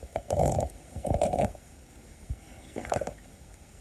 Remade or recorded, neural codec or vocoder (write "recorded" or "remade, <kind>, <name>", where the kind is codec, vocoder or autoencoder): remade, codec, SNAC